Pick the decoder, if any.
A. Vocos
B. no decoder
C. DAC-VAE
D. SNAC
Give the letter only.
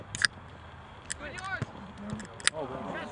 B